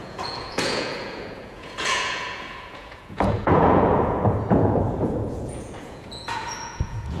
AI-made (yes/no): yes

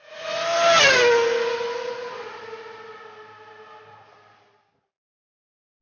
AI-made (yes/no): no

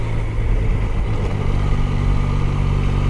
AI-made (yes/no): no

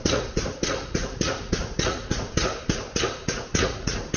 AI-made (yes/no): yes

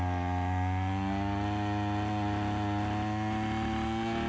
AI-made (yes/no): no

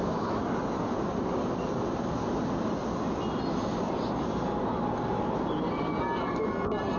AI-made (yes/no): no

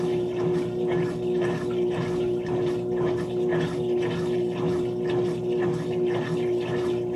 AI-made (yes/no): no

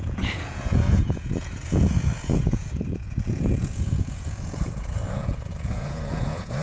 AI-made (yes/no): yes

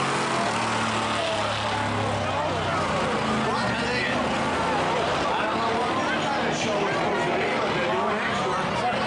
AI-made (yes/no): no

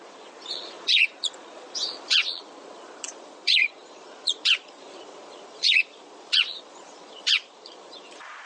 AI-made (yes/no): yes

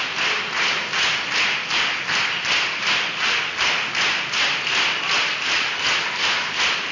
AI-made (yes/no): no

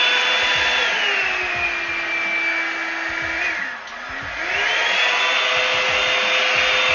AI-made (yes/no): no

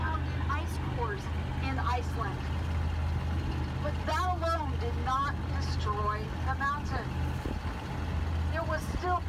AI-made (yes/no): no